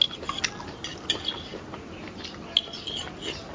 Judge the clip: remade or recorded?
recorded